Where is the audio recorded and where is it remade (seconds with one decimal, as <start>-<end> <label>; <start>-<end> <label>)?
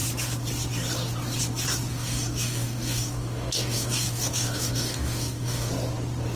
0.0-1.9 recorded; 1.9-5.7 remade; 5.7-6.4 recorded